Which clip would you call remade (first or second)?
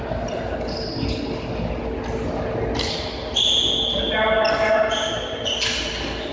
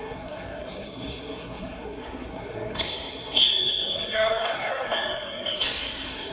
second